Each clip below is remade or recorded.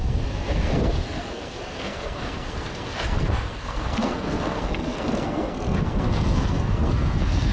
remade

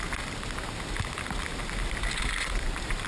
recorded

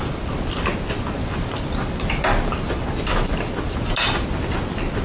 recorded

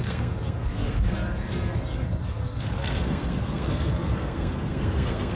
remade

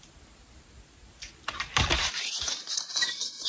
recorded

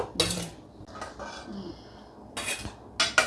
recorded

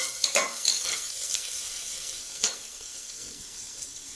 remade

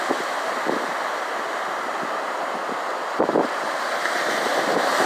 recorded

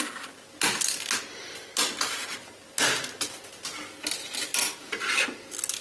recorded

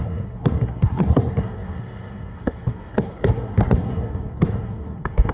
remade